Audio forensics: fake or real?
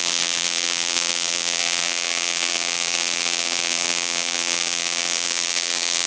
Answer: fake